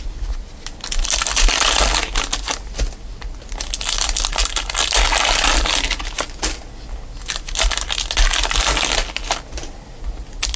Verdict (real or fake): real